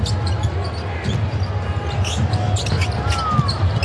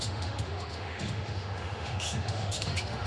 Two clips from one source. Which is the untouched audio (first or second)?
first